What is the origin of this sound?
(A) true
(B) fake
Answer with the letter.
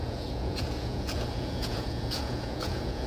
B